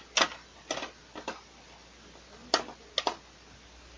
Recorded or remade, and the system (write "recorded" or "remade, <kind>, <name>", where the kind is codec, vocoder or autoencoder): recorded